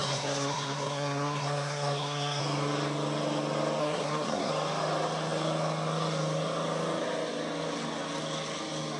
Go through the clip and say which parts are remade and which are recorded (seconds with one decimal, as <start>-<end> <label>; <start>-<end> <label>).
0.0-2.4 remade; 2.4-3.8 recorded; 3.8-4.5 remade; 4.5-9.0 recorded